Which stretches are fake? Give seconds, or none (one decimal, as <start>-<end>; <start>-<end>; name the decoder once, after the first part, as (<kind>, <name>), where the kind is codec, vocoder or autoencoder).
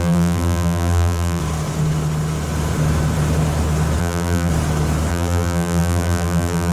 0.0-1.4 (vocoder, BigVGAN v2); 4.0-4.5; 5.1-6.7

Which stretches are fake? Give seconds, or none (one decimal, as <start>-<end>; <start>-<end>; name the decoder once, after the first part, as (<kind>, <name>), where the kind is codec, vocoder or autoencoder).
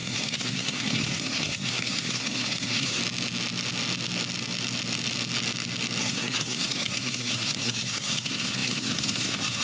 0.0-3.0 (codec, SNAC); 6.0-9.6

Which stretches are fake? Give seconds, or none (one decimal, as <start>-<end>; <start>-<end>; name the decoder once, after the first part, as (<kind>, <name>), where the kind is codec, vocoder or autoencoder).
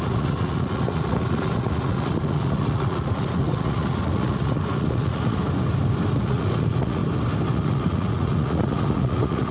0.0-5.4 (vocoder, Vocos); 6.1-7.0; 7.5-9.5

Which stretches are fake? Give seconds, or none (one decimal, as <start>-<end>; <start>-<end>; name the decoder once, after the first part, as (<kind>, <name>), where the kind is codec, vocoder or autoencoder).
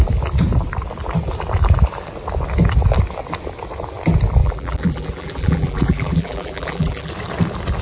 4.4-7.1 (vocoder, BigVGAN v2)